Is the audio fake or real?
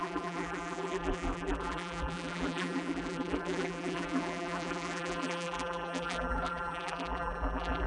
fake